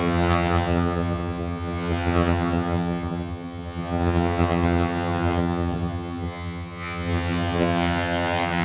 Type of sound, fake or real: fake